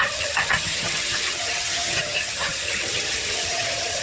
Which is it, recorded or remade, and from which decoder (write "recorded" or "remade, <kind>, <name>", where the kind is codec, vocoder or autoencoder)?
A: remade, vocoder, HiFi-GAN